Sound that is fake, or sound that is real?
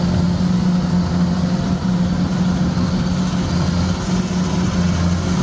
real